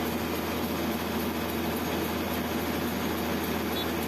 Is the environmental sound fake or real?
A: real